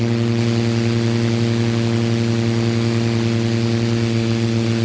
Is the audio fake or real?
real